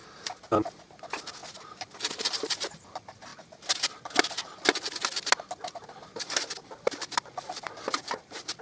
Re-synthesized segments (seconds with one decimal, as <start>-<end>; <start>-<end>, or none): 0.0-3.3; 5.7-8.6